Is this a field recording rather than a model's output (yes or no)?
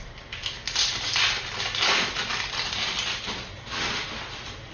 yes